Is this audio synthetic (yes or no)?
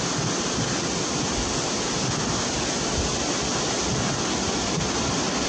no